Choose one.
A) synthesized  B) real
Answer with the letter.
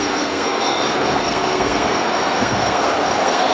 A